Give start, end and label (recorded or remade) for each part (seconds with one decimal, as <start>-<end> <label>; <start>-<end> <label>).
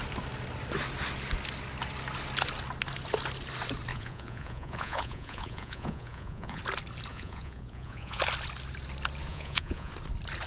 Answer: 0.0-3.9 recorded; 3.9-6.6 remade; 6.6-7.1 recorded; 7.1-8.2 remade; 8.2-9.3 recorded; 9.3-9.9 remade; 9.9-10.5 recorded